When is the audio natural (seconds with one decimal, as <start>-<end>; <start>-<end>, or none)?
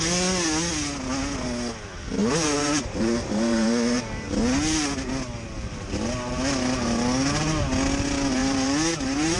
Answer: 0.0-2.2; 4.0-8.4